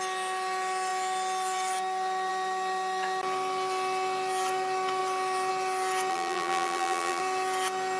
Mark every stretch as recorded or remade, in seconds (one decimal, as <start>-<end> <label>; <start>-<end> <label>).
0.0-6.1 recorded; 6.1-7.2 remade; 7.2-8.0 recorded